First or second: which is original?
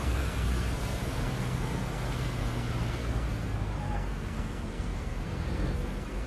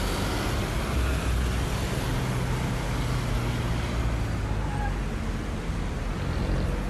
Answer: second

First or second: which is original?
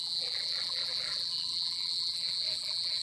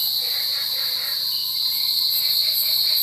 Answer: second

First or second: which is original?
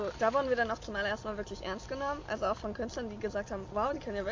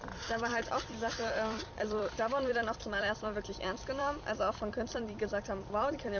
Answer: first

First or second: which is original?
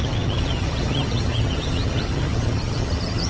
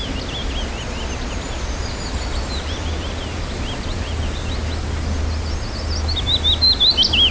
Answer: second